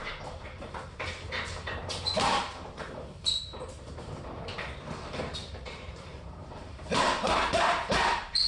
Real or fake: fake